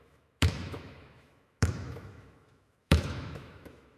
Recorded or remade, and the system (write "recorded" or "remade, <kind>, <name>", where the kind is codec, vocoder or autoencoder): remade, autoencoder, DAC-VAE